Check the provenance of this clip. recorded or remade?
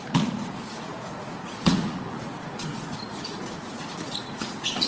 remade